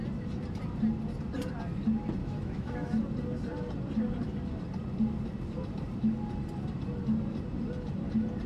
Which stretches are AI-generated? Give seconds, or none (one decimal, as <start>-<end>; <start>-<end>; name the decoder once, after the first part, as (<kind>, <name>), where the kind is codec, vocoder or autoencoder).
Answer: 2.2-3.0 (autoencoder, DAC-VAE)